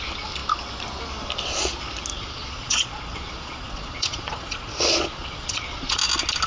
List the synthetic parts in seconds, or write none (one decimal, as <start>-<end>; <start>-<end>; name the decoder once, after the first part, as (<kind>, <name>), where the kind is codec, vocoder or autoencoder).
2.1-6.0 (vocoder, Vocos)